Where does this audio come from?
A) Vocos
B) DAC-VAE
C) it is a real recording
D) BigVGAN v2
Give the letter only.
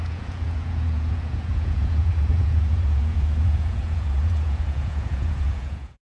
A